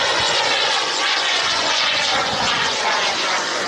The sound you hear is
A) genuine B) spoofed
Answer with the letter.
B